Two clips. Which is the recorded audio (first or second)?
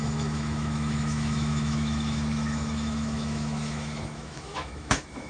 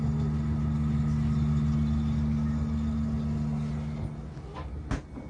second